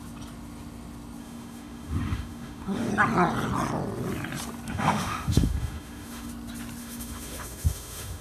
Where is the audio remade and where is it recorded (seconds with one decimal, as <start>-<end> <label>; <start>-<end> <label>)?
0.0-1.2 recorded; 1.2-2.9 remade; 2.9-4.7 recorded; 4.7-6.3 remade; 6.3-6.8 recorded; 6.8-8.2 remade